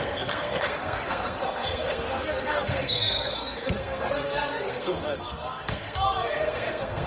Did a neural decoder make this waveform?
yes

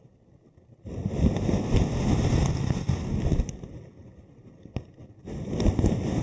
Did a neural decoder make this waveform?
no